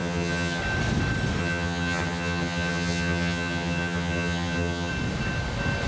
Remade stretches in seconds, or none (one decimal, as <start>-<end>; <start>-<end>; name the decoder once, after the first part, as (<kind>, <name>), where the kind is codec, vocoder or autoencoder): 0.0-0.6 (vocoder, HiFi-GAN); 1.4-4.9